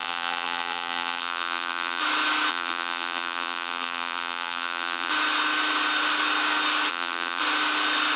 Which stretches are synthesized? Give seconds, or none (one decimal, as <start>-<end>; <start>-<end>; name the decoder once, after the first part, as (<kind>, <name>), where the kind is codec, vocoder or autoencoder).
0.0-2.0 (vocoder, BigVGAN v2); 2.5-5.1; 6.9-7.4